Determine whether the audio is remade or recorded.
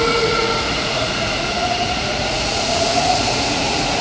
remade